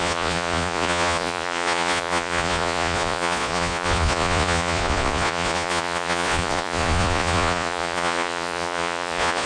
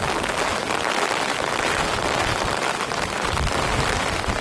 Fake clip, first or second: first